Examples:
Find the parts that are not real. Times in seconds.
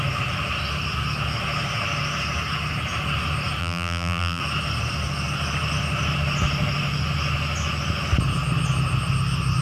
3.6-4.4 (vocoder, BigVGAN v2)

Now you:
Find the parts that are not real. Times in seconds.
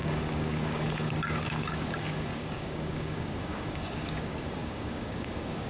0.0-5.7 (codec, DAC)